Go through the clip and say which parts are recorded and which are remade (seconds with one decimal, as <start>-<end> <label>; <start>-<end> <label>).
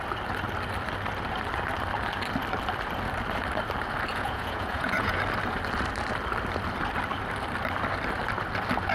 0.0-4.1 recorded; 4.1-5.2 remade; 5.2-8.9 recorded